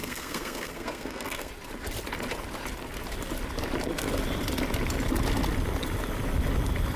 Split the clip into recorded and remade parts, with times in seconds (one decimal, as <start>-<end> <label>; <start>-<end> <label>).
0.0-1.5 remade; 1.5-7.0 recorded